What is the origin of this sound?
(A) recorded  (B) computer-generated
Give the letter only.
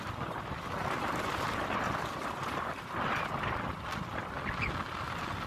A